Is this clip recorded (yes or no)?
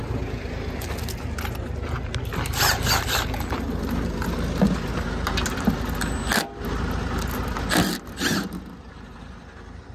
yes